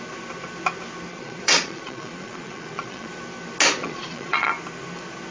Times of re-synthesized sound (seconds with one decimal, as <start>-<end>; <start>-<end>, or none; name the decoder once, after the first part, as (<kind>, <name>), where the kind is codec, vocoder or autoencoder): 1.1-3.1 (vocoder, Vocos); 3.8-4.5